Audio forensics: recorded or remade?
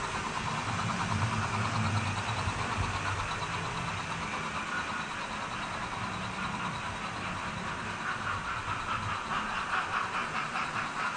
recorded